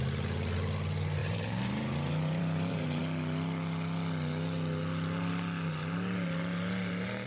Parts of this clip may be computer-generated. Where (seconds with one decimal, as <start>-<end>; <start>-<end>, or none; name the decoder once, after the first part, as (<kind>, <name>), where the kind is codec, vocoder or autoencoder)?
1.2-3.0 (vocoder, BigVGAN v2)